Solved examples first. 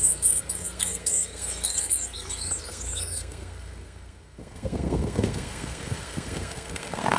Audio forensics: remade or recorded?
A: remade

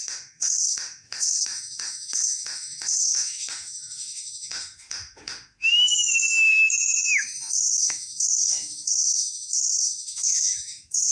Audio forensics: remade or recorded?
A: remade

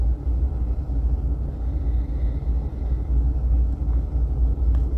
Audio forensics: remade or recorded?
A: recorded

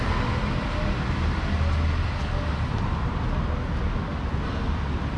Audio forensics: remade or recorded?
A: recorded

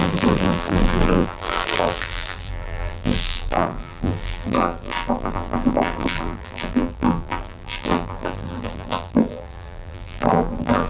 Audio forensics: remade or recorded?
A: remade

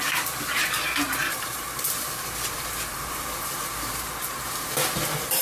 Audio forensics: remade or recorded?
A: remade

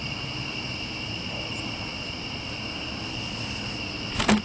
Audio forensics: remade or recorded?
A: recorded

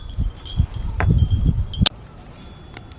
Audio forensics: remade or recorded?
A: recorded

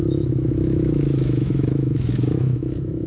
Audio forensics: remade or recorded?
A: remade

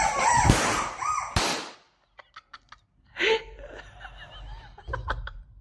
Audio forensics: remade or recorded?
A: recorded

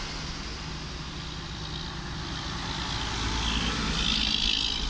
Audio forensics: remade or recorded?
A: recorded